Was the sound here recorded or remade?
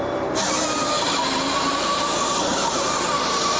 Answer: remade